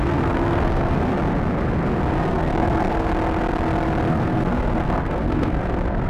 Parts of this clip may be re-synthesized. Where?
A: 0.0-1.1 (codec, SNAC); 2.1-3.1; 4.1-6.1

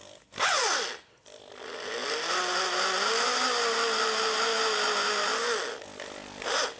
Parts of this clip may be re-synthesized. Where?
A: none

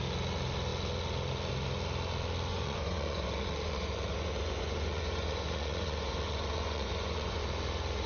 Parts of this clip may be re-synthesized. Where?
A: 2.5-7.4 (vocoder, Vocos)

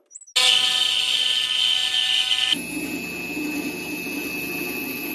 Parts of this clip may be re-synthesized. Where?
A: none

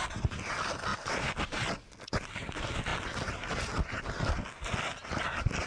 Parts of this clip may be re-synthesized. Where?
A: none

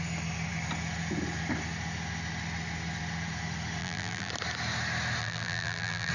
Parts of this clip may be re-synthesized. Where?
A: 3.8-4.3 (vocoder, BigVGAN v2); 5.2-6.1

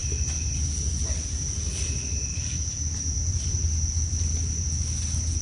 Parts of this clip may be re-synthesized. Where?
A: none

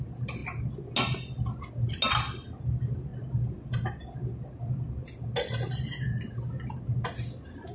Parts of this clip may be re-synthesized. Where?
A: none